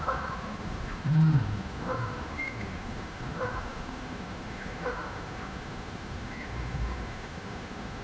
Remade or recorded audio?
remade